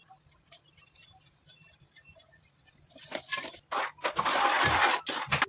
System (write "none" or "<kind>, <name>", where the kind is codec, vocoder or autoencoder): none